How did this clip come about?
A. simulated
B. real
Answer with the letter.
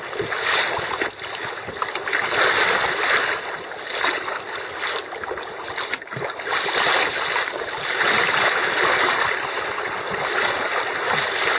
B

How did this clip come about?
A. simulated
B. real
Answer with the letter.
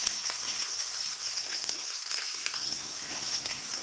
A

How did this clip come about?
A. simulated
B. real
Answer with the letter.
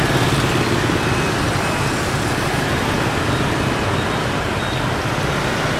B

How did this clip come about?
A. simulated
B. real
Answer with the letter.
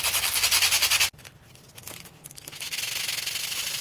B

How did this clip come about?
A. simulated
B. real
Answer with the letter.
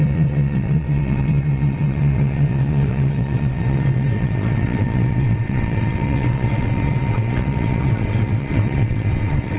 A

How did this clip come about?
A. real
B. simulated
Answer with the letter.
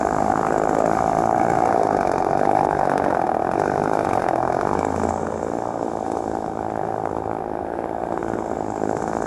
B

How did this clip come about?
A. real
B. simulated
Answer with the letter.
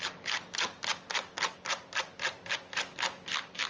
A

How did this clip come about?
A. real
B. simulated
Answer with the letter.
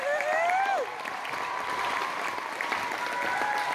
A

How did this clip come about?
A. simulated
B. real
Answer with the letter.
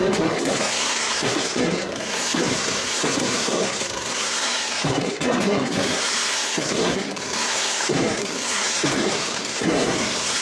A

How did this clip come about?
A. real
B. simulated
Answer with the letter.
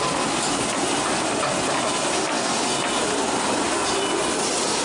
A